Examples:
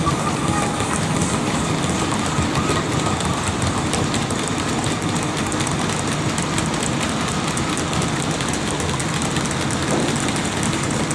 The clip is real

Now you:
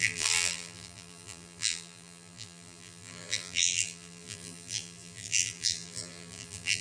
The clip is fake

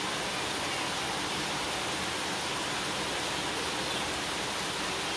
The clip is real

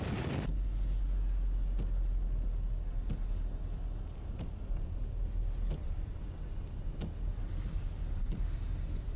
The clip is real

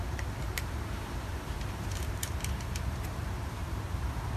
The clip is fake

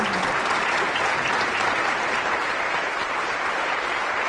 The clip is fake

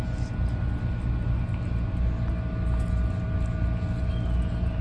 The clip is real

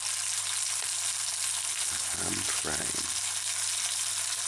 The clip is real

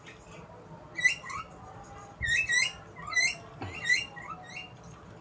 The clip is real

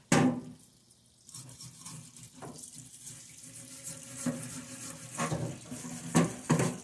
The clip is real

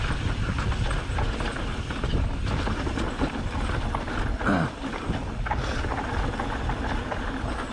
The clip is real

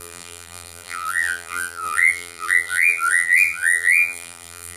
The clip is fake